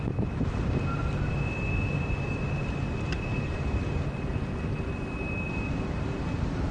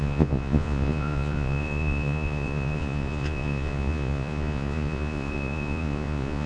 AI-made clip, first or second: second